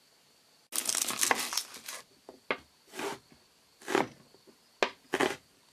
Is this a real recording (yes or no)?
yes